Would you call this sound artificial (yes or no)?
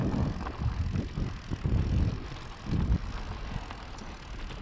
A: no